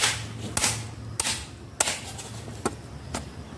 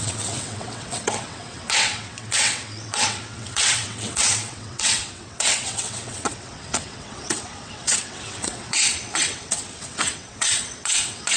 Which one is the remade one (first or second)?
second